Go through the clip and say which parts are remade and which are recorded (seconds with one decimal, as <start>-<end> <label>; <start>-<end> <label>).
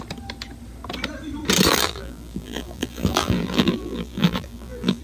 0.0-1.7 recorded; 1.7-5.0 remade